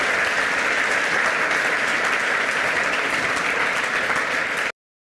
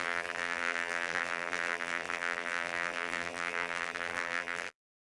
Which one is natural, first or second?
first